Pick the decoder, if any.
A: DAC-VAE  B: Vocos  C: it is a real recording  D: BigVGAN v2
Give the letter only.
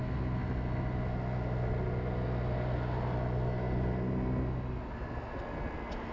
C